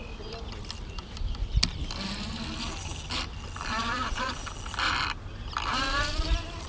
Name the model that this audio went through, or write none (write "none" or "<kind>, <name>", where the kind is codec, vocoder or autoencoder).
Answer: none